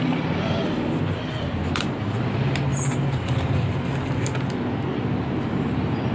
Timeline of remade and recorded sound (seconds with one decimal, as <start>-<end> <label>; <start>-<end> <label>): 0.0-6.1 recorded

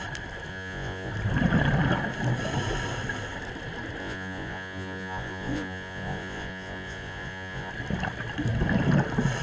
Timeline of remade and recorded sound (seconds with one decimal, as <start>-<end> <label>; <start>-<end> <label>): 0.0-0.5 recorded; 0.5-1.1 remade; 1.1-4.0 recorded; 4.0-7.7 remade; 7.7-9.4 recorded

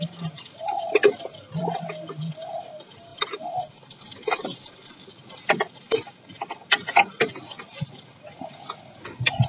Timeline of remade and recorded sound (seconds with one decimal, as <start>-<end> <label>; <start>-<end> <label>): 0.0-3.1 recorded; 3.1-5.1 remade; 5.1-9.5 recorded

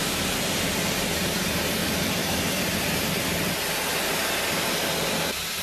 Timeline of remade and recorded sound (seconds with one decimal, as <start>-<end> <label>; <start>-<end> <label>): 0.0-5.6 recorded

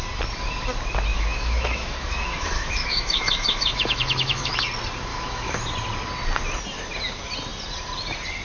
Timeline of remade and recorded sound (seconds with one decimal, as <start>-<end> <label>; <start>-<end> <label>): 0.0-1.1 recorded; 1.1-4.6 remade; 4.6-5.1 recorded; 5.1-5.6 remade; 5.6-8.4 recorded